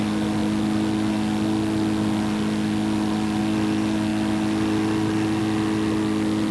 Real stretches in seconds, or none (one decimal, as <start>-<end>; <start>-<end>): 0.0-6.5